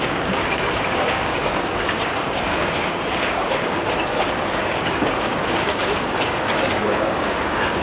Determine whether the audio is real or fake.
fake